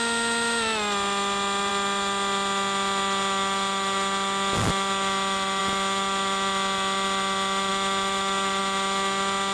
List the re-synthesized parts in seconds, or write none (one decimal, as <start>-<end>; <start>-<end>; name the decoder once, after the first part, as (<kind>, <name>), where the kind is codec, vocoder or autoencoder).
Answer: none